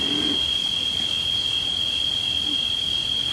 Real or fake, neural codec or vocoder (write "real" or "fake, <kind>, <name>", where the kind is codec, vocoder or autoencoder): real